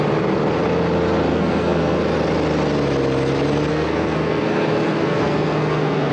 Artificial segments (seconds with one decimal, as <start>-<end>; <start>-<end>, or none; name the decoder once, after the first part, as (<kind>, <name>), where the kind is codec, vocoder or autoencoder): 1.3-2.0 (codec, SNAC); 3.7-6.1